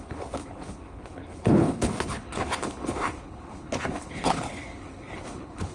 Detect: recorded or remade remade